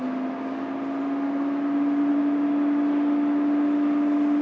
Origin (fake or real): real